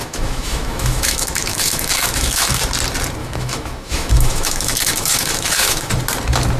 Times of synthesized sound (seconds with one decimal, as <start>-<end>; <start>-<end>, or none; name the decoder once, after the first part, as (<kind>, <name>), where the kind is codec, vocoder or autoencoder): 0.0-2.6 (autoencoder, DAC-VAE); 3.2-5.9